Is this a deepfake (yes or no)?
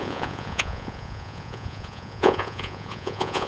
yes